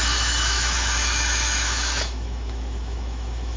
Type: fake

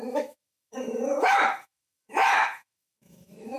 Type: fake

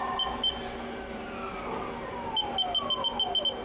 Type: real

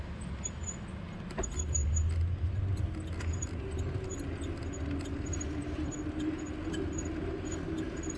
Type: real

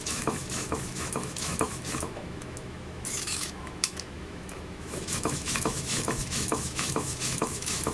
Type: fake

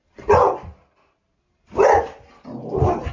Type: real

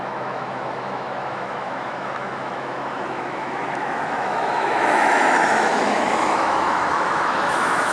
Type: fake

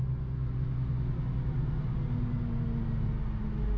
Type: real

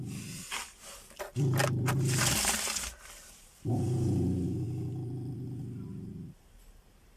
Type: real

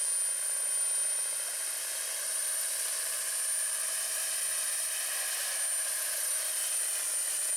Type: real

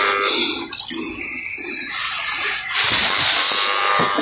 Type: real